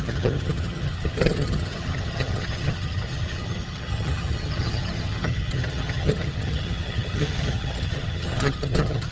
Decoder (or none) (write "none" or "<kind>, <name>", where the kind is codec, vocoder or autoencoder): vocoder, HiFi-GAN